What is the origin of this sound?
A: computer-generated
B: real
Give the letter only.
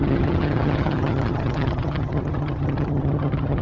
A